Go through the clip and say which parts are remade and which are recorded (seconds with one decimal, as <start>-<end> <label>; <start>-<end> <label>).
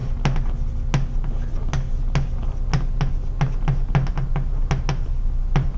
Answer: 0.0-5.8 recorded